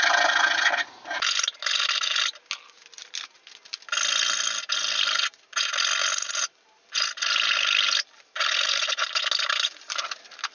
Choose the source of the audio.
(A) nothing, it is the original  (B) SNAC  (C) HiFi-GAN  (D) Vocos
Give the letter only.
A